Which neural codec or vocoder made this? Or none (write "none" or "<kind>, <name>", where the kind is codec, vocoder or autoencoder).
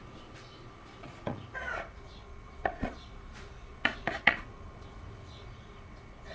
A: vocoder, Vocos